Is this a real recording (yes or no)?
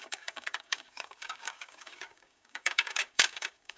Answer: no